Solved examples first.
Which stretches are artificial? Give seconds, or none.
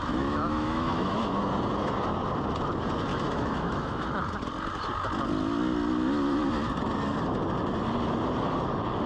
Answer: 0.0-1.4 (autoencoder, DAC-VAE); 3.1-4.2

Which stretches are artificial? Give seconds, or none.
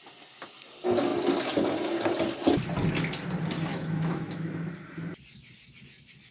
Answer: 3.7-4.7 (autoencoder, DAC-VAE)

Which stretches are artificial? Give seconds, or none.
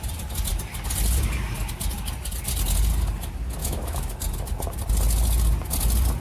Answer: 3.6-4.1 (autoencoder, DAC-VAE)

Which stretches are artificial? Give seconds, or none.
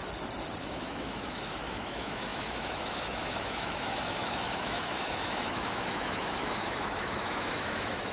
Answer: 0.6-8.1 (autoencoder, DAC-VAE)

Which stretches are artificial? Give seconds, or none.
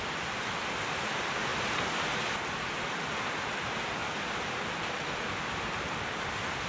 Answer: none